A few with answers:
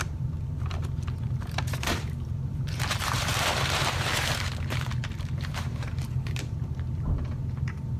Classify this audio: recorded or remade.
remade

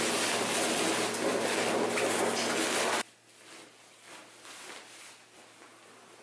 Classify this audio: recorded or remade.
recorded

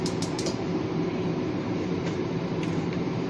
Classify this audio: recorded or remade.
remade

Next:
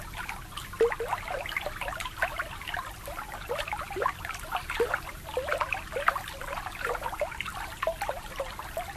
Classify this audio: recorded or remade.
recorded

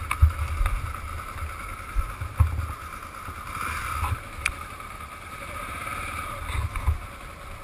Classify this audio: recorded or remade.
recorded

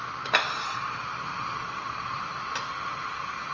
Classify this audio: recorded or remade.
recorded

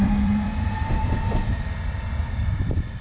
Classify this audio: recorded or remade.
remade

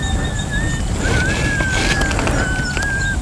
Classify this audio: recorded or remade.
recorded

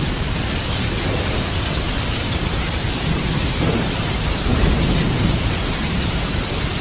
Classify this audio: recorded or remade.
remade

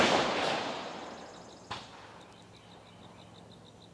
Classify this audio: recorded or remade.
recorded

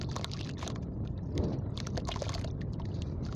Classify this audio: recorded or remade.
recorded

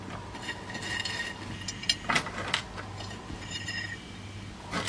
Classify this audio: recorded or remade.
recorded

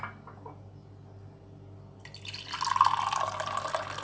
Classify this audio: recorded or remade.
recorded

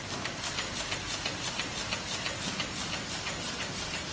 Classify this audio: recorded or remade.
recorded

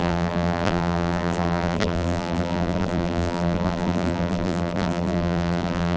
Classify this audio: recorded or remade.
remade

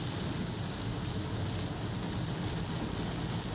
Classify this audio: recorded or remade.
recorded